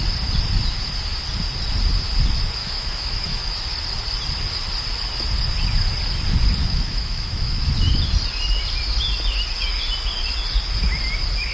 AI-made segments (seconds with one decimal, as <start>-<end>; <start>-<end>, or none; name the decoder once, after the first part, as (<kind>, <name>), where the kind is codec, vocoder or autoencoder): 2.6-3.6 (autoencoder, DAC-VAE); 6.6-7.7

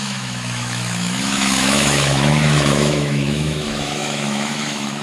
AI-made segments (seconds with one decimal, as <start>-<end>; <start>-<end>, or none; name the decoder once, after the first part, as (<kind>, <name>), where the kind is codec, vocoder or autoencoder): 0.0-5.0 (autoencoder, DAC-VAE)